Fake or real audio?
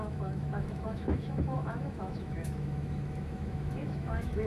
fake